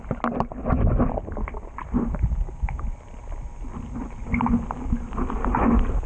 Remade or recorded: recorded